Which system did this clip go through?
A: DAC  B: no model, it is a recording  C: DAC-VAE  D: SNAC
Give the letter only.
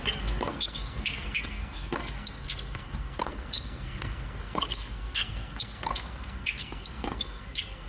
D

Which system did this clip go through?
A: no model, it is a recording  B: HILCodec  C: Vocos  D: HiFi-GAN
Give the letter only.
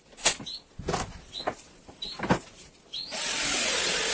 A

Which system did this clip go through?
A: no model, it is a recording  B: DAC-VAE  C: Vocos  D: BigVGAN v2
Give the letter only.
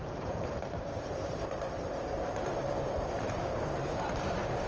D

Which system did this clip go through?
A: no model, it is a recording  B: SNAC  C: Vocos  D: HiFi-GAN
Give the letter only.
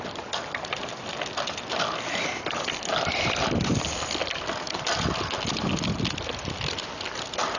A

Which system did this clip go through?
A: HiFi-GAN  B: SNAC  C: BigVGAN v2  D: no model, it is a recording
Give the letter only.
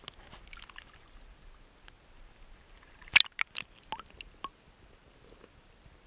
D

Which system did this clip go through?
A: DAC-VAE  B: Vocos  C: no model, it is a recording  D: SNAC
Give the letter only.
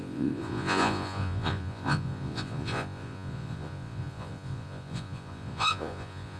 B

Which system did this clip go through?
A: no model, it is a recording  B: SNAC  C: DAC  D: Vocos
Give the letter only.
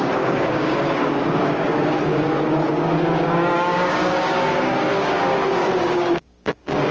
C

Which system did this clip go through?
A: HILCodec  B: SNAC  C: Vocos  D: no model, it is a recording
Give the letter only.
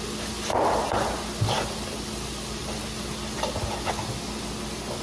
D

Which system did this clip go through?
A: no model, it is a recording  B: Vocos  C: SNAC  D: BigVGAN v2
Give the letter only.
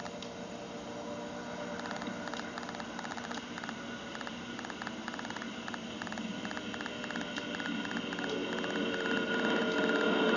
A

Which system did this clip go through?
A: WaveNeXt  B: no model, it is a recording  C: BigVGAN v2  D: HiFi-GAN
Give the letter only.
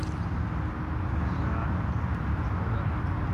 B